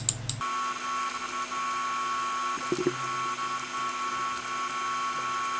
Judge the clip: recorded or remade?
recorded